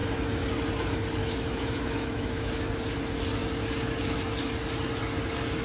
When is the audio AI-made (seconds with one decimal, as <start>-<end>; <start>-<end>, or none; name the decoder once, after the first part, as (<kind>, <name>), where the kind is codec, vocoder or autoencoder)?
1.2-2.7 (autoencoder, DAC-VAE)